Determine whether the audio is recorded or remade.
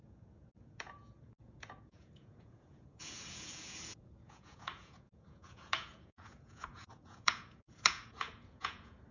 remade